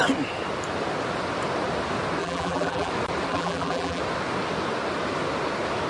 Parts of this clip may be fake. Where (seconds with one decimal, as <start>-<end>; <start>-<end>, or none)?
2.2-2.9; 3.3-4.0